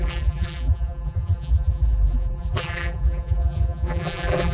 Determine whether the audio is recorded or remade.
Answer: remade